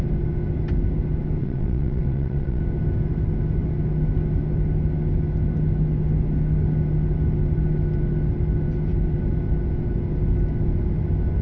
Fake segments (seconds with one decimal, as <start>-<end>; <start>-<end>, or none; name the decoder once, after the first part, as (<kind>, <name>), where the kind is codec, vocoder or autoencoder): 1.4-2.6 (vocoder, WaveNeXt)